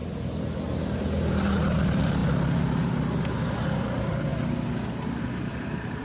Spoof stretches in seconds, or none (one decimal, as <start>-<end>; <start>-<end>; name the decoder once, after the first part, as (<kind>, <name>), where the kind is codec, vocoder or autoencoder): 1.3-2.2 (vocoder, BigVGAN v2); 3.4-4.3; 5.2-6.0